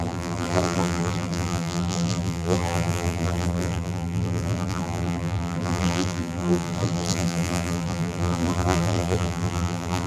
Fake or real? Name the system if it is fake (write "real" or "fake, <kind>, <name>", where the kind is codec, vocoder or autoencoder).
fake, vocoder, BigVGAN v2